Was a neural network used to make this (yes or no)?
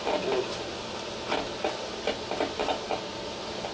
no